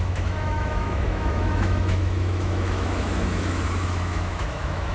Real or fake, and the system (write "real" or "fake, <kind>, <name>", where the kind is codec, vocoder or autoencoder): fake, autoencoder, DAC-VAE